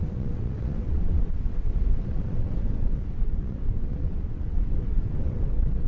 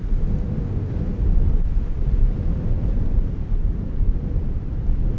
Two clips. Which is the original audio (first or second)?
second